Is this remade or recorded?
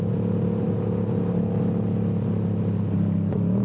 recorded